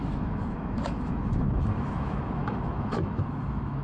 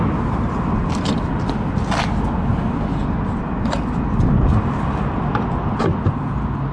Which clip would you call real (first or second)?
second